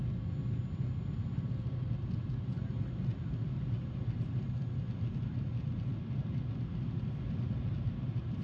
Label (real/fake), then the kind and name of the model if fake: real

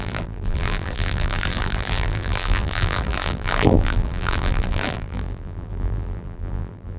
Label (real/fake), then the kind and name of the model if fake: fake, vocoder, BigVGAN v2